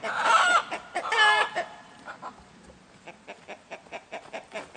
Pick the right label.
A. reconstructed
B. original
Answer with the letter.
A